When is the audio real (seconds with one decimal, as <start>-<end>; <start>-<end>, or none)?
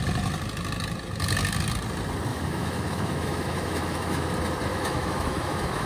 0.0-2.3; 4.3-4.7